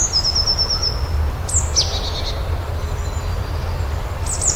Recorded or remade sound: recorded